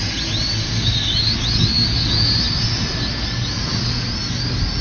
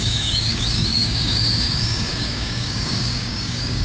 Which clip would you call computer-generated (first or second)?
second